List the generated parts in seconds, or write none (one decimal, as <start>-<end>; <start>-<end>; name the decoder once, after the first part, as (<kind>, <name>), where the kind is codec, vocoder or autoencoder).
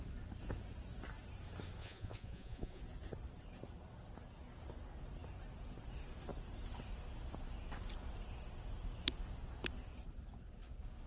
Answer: 1.8-2.8 (vocoder, Vocos)